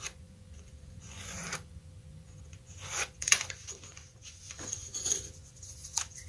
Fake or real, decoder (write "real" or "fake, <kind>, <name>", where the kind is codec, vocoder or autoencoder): fake, vocoder, Vocos